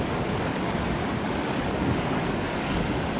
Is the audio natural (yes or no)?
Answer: no